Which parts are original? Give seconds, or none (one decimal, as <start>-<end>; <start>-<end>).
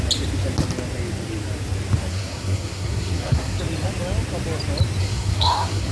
0.0-2.1; 3.6-5.0